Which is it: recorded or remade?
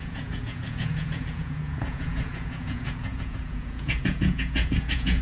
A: remade